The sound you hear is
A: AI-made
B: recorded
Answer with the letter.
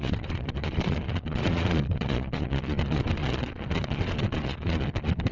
A